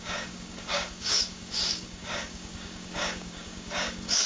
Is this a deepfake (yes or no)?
yes